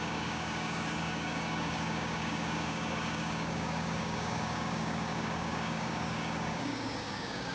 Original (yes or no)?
no